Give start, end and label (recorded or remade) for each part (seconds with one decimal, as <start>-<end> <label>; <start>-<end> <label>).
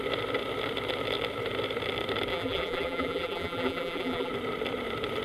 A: 0.0-2.3 recorded; 2.3-4.3 remade; 4.3-5.2 recorded